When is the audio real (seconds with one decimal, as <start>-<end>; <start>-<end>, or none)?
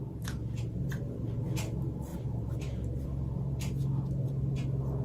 0.0-5.0